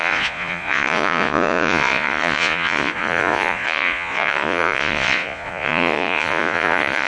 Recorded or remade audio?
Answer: remade